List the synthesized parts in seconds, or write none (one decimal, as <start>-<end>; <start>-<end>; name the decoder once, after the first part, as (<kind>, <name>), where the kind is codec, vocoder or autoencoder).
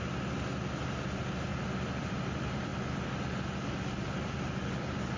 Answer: none